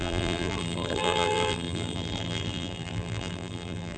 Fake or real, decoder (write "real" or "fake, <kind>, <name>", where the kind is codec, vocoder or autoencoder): fake, vocoder, BigVGAN v2